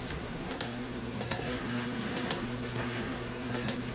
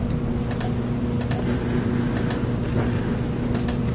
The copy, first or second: first